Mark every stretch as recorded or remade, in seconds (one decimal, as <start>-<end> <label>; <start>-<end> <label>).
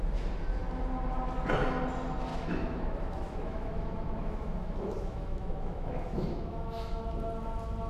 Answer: 0.0-2.3 recorded; 2.3-7.0 remade; 7.0-7.9 recorded